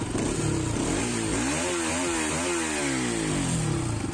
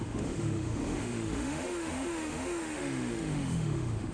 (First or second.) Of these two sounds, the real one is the first